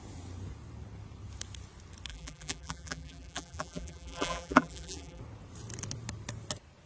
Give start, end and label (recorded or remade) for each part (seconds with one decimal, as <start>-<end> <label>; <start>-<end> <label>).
0.0-2.1 recorded; 2.1-5.2 remade; 5.2-6.9 recorded